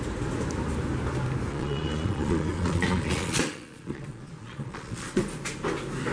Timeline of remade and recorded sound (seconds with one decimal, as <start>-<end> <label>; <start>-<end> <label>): 0.0-1.5 recorded; 1.5-5.2 remade; 5.2-6.1 recorded